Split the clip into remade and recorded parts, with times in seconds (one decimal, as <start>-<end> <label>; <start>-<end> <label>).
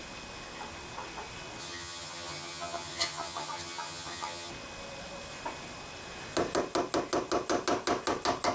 0.0-1.6 recorded; 1.6-4.5 remade; 4.5-8.5 recorded